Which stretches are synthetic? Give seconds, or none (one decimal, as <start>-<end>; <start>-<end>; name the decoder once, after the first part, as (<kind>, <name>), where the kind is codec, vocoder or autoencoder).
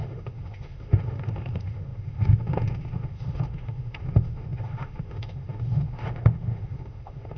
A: 0.0-7.4 (autoencoder, DAC-VAE)